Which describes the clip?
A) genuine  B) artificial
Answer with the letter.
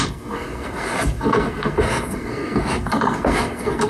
B